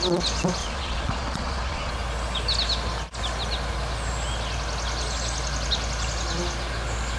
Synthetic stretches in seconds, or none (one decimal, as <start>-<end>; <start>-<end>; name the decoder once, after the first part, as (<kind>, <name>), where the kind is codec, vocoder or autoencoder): 0.6-1.9 (vocoder, Vocos)